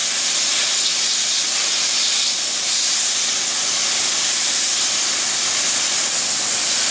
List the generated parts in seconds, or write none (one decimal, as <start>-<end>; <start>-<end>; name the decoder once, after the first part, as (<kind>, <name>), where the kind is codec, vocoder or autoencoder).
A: none